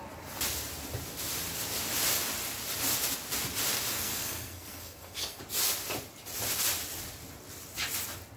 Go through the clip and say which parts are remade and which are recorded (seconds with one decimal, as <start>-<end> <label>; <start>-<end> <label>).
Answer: 0.0-3.9 recorded; 3.9-5.4 remade; 5.4-8.4 recorded